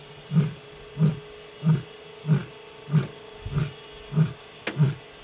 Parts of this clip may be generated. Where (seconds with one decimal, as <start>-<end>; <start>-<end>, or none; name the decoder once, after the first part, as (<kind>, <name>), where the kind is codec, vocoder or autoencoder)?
0.0-0.9 (vocoder, BigVGAN v2)